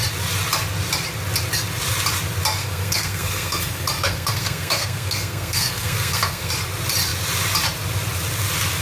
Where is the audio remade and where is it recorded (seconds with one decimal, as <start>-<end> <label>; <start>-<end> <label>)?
0.0-2.6 recorded; 2.6-6.5 remade; 6.5-8.8 recorded